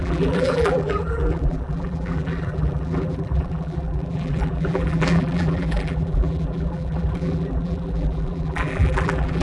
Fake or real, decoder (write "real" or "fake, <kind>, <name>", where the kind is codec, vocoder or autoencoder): fake, vocoder, BigVGAN v2